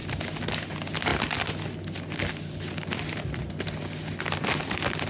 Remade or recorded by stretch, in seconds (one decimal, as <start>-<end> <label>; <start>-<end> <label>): 0.0-5.1 recorded